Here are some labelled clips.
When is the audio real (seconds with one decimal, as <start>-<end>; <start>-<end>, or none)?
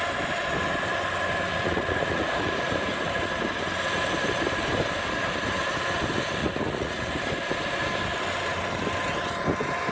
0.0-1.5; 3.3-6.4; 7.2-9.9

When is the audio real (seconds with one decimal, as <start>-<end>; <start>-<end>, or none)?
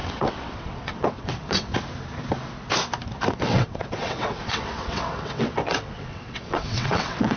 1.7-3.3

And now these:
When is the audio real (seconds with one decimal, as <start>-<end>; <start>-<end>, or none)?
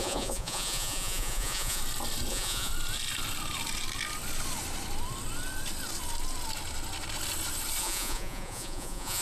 1.8-2.3; 2.7-7.8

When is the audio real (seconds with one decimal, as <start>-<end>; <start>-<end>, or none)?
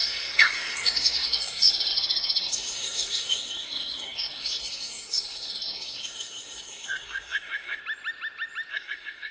7.8-8.7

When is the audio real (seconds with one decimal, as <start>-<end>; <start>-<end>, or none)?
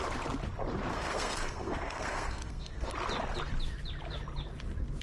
0.0-0.9; 2.9-5.0